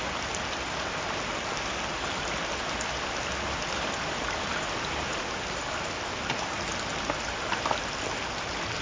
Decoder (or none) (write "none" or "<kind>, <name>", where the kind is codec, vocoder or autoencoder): none